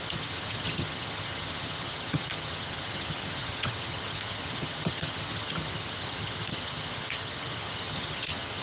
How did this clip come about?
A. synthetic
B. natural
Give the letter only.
A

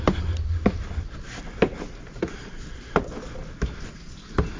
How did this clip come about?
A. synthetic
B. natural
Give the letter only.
B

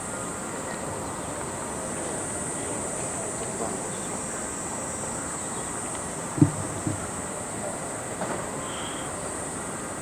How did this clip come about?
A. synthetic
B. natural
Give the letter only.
B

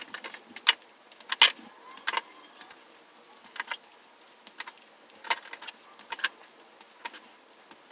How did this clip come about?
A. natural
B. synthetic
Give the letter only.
A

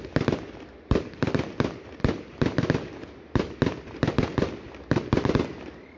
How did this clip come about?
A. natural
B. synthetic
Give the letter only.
A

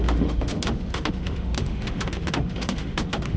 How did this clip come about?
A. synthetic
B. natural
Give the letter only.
A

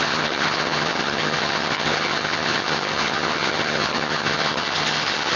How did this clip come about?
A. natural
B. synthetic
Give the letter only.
B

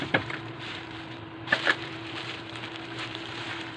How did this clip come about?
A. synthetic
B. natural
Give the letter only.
A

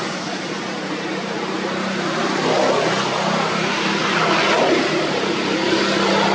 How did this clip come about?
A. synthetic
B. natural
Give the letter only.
B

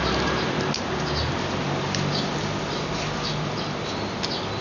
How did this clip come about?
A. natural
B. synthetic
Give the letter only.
A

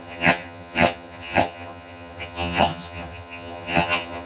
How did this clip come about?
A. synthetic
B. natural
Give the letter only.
A